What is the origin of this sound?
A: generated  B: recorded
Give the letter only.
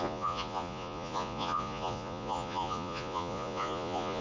A